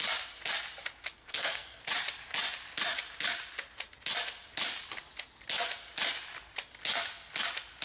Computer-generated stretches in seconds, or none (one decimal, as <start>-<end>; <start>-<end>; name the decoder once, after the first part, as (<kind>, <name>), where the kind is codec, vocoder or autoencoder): 1.2-1.8 (codec, SNAC)

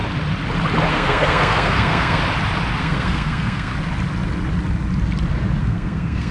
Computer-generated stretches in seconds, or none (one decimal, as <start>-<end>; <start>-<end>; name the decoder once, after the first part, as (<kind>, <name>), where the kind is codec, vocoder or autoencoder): 0.9-2.2 (codec, SNAC); 2.8-3.7; 5.6-6.3

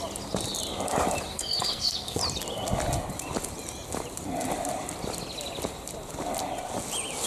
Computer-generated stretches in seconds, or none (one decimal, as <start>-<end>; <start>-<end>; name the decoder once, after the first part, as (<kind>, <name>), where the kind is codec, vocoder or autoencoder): 1.3-2.2 (codec, SNAC)

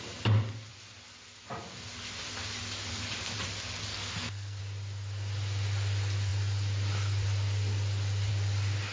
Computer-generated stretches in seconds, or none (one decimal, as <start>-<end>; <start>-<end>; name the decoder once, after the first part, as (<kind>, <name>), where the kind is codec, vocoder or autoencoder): 3.9-4.6 (codec, SNAC)